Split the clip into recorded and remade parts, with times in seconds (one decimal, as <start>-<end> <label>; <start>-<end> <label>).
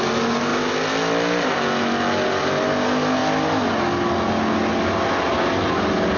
0.0-6.2 recorded